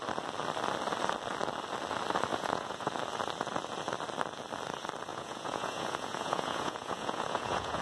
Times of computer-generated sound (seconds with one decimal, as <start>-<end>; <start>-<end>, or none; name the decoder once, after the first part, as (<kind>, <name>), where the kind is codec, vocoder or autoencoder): 2.3-2.9 (vocoder, Vocos); 5.1-7.8